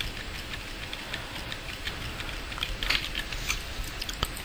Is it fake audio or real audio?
real